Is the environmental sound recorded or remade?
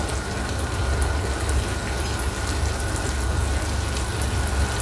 recorded